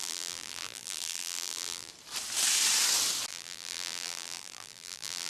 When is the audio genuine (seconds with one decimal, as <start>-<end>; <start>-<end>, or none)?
1.9-3.3

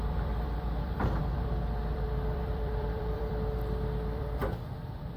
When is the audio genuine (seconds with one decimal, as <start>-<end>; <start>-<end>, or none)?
4.4-5.2

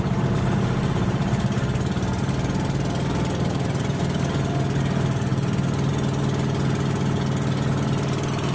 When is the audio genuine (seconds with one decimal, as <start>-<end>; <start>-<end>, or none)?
0.0-8.5

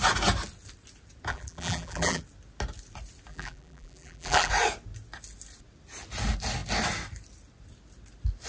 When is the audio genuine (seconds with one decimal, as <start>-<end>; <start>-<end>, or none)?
0.0-1.3; 2.2-3.3; 4.5-8.5

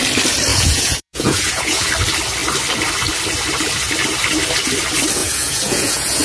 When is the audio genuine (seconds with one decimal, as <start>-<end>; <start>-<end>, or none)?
0.0-0.5; 1.9-5.2

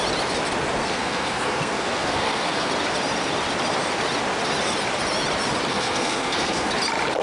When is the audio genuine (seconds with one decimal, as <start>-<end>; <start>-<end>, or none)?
0.0-0.8; 2.7-5.7; 6.7-7.2

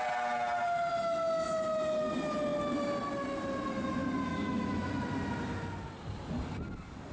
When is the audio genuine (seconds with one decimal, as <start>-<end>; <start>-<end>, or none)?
0.0-4.3; 4.9-7.1